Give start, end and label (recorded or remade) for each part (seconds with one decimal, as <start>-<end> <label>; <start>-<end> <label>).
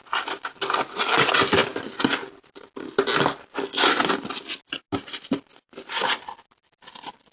0.0-5.5 recorded; 5.5-6.2 remade; 6.2-7.3 recorded